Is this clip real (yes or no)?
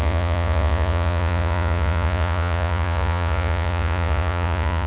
no